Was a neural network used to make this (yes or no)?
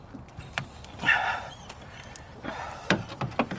yes